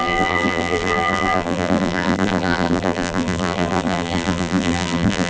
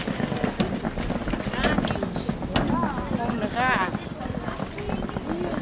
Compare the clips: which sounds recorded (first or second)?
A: second